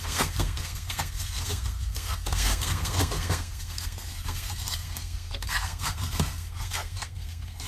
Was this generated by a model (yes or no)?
yes